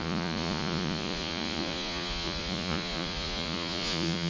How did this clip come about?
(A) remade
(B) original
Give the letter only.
A